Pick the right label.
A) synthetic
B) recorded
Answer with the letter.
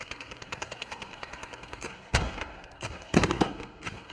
A